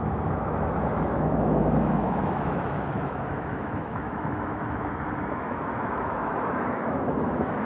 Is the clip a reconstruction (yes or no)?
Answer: yes